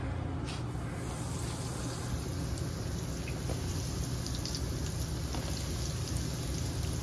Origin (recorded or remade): recorded